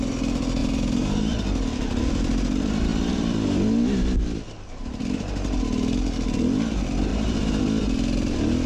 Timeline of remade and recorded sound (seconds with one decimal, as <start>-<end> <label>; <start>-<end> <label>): 0.0-0.6 recorded; 0.6-1.3 remade; 1.3-7.1 recorded; 7.1-7.6 remade; 7.6-8.7 recorded